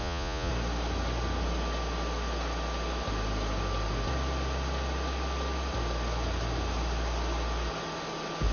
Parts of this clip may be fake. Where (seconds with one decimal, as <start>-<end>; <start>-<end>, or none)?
0.0-0.5